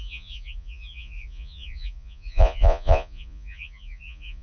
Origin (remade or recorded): remade